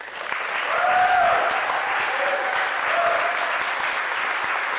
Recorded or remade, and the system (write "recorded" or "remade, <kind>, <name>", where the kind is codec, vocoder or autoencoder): recorded